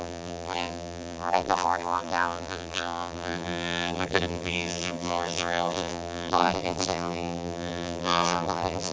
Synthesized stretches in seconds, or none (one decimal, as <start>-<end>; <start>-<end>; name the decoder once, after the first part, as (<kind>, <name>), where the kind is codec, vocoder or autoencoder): 0.0-8.9 (vocoder, BigVGAN v2)